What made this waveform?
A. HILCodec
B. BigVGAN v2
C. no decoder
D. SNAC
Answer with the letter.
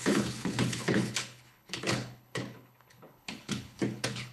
A